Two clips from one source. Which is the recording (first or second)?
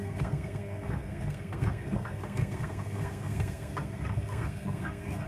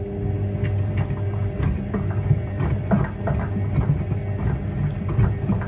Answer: second